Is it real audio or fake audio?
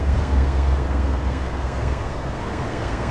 fake